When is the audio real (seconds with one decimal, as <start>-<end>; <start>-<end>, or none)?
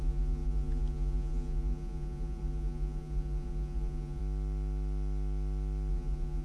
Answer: 4.2-5.9